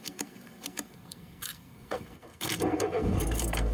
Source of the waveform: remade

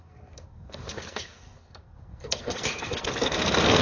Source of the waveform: remade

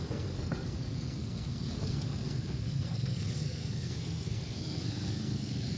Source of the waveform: remade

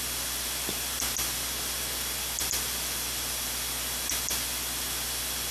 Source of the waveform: recorded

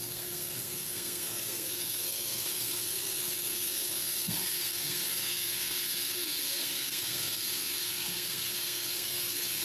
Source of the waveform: remade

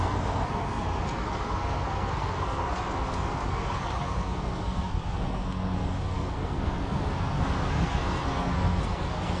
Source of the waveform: remade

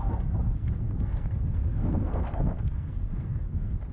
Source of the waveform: remade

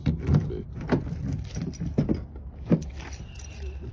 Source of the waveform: recorded